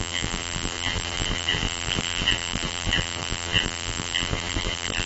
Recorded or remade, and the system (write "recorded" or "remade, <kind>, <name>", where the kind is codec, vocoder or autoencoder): remade, vocoder, BigVGAN v2